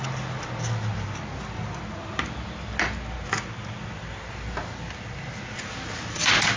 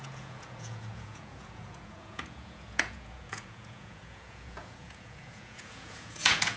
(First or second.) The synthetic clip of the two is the second